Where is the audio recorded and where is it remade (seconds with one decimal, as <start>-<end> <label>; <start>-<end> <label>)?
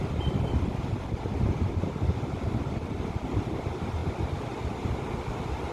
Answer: 0.0-5.7 recorded